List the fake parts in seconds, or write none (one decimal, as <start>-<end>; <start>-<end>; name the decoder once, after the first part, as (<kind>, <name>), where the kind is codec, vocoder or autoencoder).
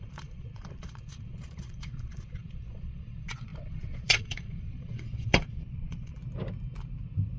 0.0-6.2 (vocoder, Vocos)